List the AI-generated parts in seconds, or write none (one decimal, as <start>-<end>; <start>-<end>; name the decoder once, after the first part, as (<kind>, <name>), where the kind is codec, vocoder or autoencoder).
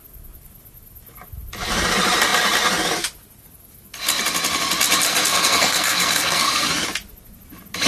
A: 5.1-6.7 (codec, SNAC)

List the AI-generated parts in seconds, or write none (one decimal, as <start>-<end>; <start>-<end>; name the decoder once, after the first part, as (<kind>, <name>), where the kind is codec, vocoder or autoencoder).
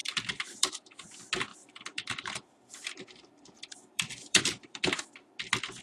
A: 0.0-0.7 (vocoder, BigVGAN v2); 1.5-5.0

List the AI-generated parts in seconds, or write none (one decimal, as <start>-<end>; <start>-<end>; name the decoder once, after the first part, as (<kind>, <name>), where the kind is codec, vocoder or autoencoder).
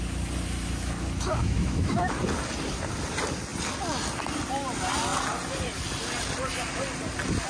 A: 1.4-2.1 (autoencoder, DAC-VAE)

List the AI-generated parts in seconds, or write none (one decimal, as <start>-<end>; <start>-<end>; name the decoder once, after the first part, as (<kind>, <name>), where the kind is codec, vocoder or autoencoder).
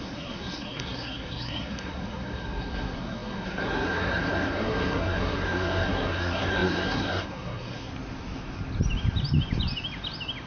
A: 0.0-7.9 (codec, SNAC)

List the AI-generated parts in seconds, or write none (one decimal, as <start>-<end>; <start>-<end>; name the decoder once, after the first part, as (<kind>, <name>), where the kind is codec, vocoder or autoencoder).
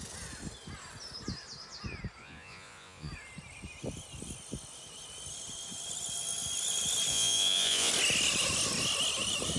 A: 2.2-3.1 (vocoder, Vocos); 7.1-7.9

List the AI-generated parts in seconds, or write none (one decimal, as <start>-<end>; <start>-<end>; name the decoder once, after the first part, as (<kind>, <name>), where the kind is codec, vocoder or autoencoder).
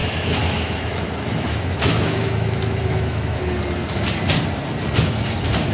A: 0.0-3.4 (autoencoder, DAC-VAE)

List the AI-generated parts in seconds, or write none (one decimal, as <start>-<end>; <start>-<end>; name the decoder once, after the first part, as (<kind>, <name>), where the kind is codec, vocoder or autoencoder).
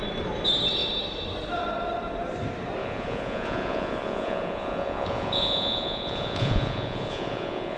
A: 2.8-7.8 (vocoder, Vocos)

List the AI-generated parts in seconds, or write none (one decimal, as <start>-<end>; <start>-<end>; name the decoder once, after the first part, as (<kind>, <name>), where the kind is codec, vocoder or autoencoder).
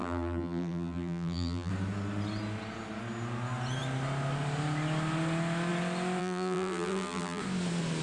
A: 0.0-1.7 (vocoder, BigVGAN v2); 6.2-7.4